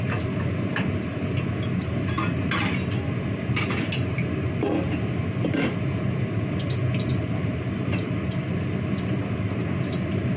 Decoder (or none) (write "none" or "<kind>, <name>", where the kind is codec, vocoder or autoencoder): none